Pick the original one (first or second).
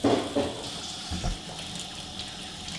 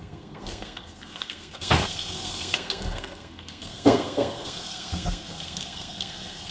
first